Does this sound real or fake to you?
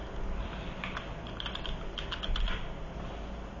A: real